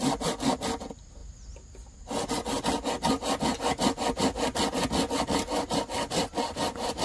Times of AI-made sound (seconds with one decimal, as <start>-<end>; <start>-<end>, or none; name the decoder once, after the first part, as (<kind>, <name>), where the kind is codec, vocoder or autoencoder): none